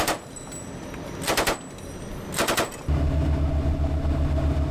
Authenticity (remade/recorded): recorded